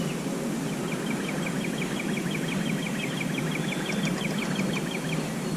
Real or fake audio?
real